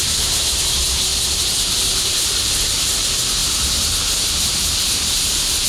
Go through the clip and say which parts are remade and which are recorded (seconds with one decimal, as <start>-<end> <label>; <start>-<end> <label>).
0.0-1.1 remade; 1.1-1.6 recorded; 1.6-5.7 remade